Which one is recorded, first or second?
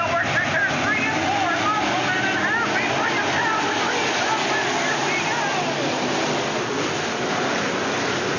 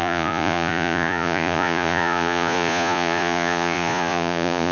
first